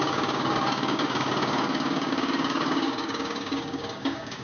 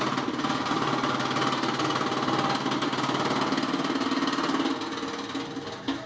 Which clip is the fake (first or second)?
first